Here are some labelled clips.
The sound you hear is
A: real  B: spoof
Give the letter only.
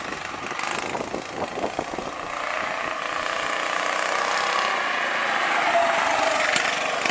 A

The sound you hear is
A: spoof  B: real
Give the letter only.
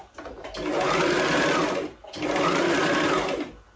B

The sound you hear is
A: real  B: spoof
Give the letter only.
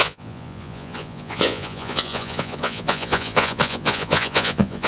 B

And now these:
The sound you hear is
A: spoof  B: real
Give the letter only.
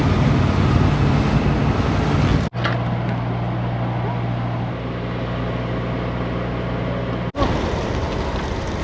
B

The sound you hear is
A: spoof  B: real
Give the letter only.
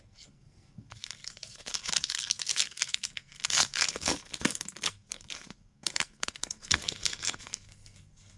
A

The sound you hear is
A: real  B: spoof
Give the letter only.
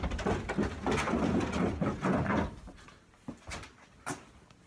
A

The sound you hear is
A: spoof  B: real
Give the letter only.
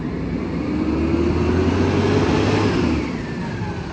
B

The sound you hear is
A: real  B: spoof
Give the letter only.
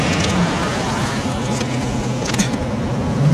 A